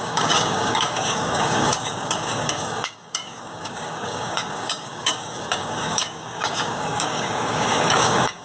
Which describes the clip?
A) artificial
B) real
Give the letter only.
A